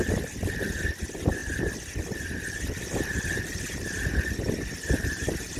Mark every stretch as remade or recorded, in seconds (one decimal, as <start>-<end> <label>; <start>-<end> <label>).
0.0-5.6 recorded